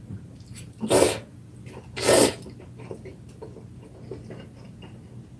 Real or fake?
real